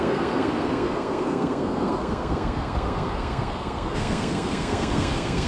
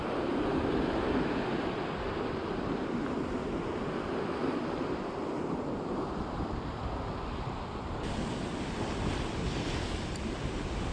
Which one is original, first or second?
second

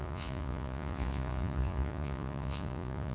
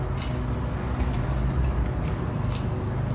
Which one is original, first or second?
second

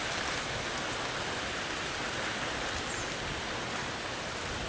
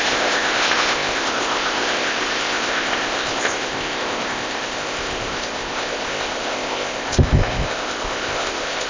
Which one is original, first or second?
first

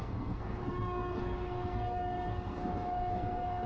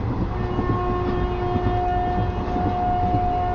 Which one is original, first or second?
second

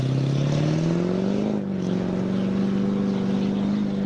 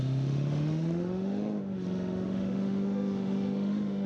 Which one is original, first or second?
first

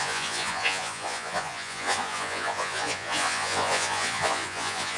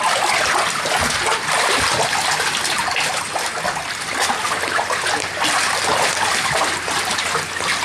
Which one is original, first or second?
second